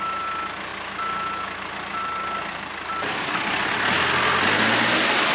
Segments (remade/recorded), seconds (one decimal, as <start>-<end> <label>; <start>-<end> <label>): 0.0-5.3 recorded